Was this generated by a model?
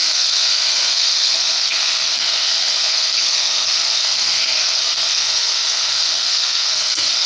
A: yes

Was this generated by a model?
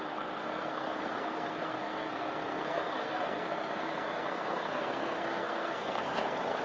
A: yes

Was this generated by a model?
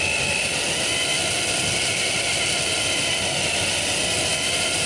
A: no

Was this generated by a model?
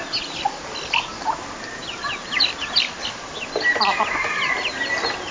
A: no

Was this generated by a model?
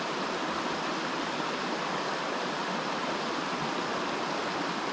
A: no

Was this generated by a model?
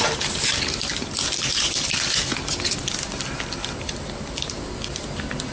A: no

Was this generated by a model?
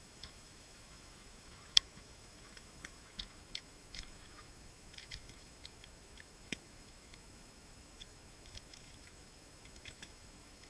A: yes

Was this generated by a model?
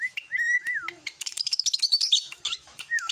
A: yes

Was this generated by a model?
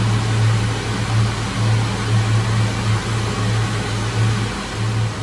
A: no